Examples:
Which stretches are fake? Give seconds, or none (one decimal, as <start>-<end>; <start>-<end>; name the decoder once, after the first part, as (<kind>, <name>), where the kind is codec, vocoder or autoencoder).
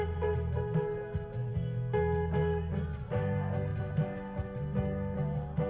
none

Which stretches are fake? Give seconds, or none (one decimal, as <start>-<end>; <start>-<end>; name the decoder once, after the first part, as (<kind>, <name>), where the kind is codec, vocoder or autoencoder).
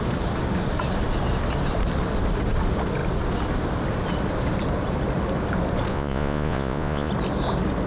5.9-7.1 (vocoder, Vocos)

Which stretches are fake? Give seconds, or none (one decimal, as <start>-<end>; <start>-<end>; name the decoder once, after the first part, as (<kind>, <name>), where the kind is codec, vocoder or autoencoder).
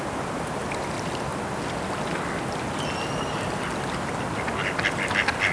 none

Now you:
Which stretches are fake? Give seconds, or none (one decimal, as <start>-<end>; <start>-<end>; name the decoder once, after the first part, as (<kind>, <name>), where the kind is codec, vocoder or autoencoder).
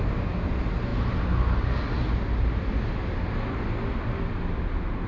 none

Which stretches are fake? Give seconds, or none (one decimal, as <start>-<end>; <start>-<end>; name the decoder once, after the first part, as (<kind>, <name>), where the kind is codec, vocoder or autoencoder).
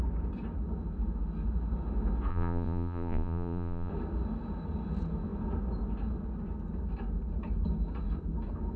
2.3-3.9 (vocoder, Vocos)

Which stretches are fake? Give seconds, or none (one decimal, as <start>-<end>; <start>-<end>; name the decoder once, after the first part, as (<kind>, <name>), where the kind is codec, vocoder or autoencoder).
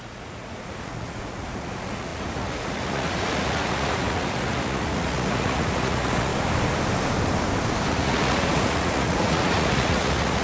0.0-6.3 (vocoder, Vocos); 7.9-10.4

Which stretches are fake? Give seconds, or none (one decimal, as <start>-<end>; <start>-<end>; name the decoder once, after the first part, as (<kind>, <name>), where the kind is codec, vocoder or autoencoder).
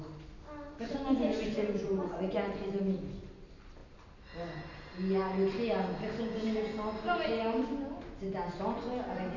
1.3-2.8 (vocoder, Vocos)